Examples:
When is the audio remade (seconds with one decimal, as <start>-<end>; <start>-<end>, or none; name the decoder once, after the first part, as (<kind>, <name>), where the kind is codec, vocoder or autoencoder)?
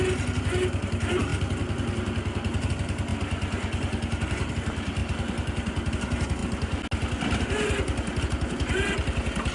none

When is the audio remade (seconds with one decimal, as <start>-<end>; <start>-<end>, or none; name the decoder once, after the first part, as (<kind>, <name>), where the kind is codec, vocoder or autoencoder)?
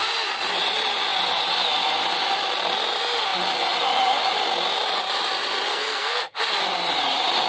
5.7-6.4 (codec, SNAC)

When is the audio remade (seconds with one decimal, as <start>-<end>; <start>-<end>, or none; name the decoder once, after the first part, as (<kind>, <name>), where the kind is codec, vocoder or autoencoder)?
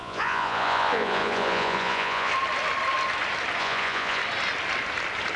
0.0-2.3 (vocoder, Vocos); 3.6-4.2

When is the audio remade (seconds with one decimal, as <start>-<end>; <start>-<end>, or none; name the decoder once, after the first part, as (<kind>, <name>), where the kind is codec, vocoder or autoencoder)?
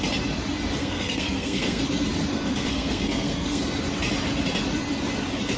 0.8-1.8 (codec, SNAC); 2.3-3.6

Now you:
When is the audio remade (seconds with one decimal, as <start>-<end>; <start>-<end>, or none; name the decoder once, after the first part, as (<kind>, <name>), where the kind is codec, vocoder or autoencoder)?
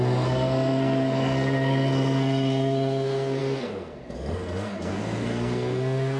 0.0-6.2 (codec, SNAC)